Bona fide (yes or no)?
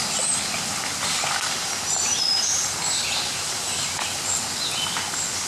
yes